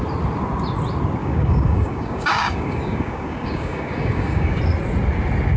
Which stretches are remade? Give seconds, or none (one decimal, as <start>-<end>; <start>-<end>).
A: 1.2-4.6